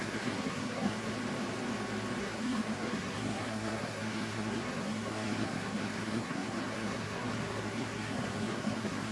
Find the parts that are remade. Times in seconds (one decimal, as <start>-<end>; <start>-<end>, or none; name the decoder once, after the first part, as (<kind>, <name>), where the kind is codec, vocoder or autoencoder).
0.0-1.1 (codec, SNAC); 2.2-9.1